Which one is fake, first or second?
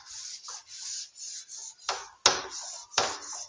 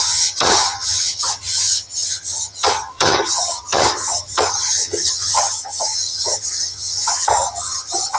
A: second